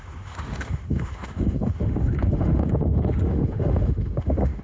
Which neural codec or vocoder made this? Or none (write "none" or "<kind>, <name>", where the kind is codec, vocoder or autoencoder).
autoencoder, DAC-VAE